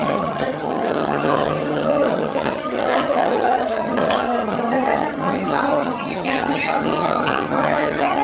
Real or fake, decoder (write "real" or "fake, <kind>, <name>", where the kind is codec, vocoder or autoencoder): fake, vocoder, HiFi-GAN